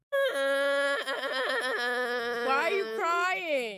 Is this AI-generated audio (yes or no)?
yes